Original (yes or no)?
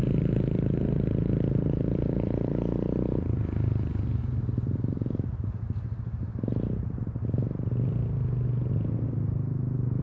yes